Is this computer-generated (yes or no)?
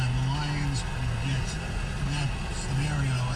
no